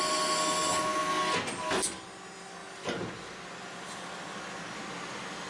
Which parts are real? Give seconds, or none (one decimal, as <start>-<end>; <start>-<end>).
0.0-5.5